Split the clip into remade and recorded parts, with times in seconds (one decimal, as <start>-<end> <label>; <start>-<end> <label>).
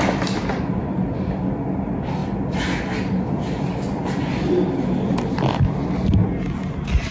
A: 0.0-7.1 recorded